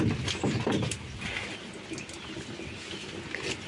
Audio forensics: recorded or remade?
recorded